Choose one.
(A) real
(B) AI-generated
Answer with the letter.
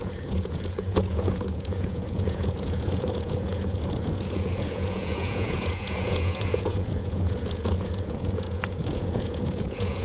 B